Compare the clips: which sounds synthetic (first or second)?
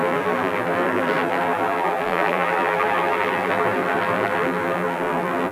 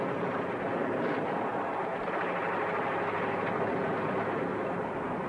first